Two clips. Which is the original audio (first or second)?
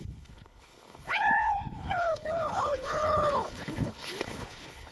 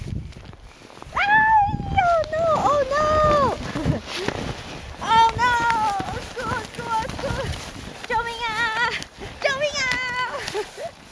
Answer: second